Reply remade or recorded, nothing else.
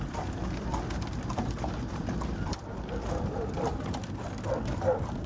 recorded